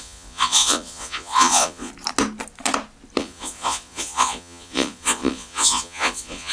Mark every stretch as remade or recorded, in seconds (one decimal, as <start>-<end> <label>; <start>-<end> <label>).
0.0-1.9 remade; 1.9-3.2 recorded; 3.2-6.5 remade